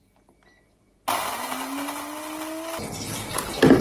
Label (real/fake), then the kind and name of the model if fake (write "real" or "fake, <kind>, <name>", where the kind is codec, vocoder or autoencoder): real